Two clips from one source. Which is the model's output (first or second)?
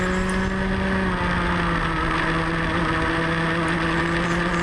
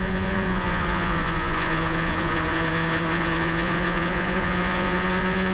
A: second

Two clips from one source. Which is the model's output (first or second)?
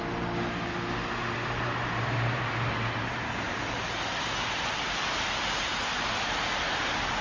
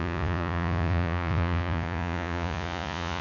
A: second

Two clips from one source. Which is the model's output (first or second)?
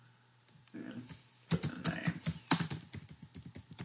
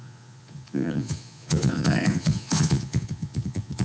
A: second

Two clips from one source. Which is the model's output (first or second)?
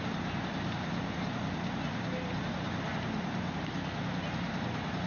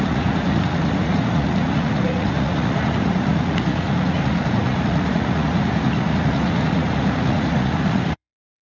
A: second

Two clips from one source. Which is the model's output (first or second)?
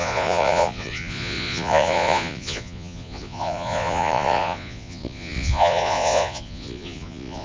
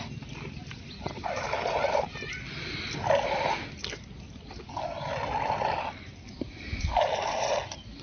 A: first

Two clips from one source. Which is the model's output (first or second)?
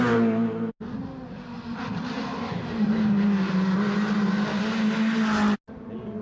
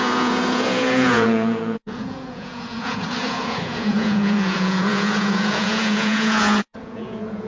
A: second